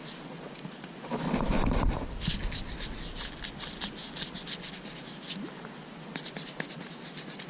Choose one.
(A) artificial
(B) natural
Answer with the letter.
B